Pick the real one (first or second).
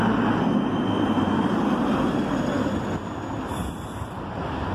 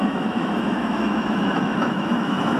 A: first